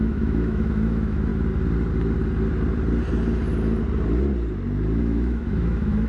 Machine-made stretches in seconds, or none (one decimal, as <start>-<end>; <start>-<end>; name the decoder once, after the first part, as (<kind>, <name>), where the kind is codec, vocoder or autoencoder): 0.0-1.3 (autoencoder, DAC-VAE); 5.0-6.1